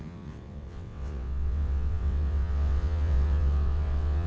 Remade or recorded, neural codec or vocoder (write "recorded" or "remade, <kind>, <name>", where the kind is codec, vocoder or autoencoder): remade, vocoder, WaveNeXt